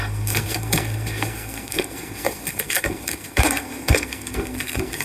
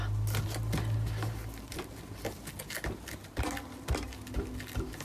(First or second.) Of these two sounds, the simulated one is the first